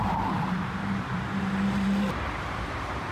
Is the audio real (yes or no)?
no